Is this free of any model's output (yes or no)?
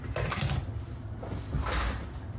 yes